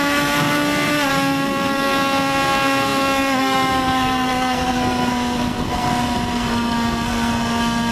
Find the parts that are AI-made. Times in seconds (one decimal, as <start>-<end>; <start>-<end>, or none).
0.0-7.9